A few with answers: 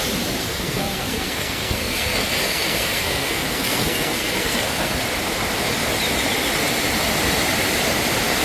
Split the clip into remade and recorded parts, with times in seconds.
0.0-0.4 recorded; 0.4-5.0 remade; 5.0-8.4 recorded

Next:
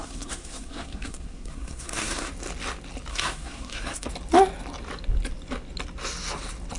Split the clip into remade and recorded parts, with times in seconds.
0.0-2.3 remade; 2.3-3.1 recorded; 3.1-4.1 remade; 4.1-6.8 recorded

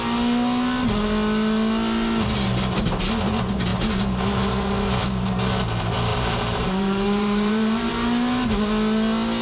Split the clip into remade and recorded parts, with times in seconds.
0.0-6.1 recorded; 6.1-7.9 remade; 7.9-9.4 recorded

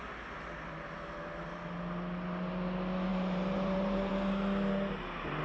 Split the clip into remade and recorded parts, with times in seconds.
0.0-3.1 recorded; 3.1-4.1 remade; 4.1-5.4 recorded

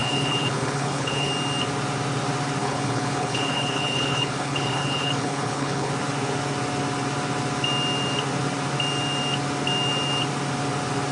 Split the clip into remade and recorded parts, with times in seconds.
0.0-1.3 remade; 1.3-2.6 recorded; 2.6-5.9 remade; 5.9-11.1 recorded

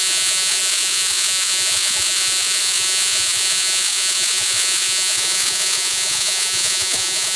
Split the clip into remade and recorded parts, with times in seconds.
0.0-7.4 remade